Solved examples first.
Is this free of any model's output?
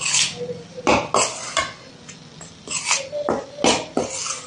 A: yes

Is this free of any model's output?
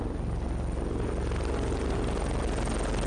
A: yes